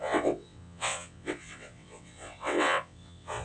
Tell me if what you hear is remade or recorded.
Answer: remade